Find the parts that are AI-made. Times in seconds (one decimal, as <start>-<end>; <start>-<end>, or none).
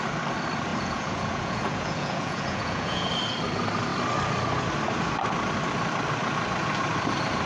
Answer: 0.7-3.1